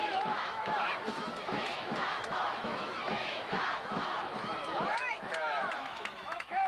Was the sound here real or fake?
fake